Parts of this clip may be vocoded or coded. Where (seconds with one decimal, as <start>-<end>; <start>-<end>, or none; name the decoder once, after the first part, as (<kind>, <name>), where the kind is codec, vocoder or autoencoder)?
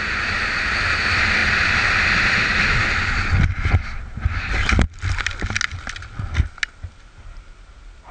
none